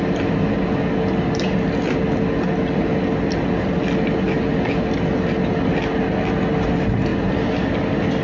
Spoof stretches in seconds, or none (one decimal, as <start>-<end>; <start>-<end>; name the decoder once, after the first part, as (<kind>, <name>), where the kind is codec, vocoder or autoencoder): none